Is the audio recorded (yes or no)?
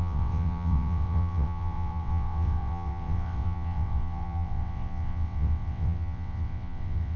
no